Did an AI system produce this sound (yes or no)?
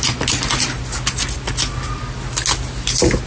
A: no